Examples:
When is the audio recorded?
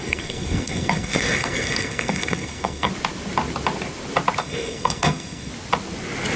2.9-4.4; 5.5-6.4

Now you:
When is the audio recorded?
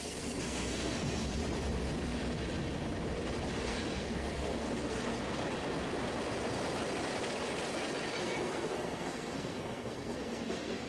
1.4-3.6; 5.4-8.2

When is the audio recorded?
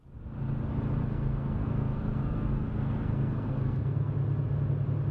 0.0-1.0; 4.1-5.1